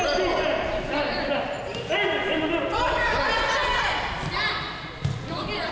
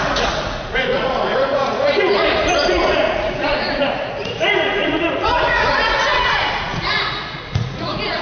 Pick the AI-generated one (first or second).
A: second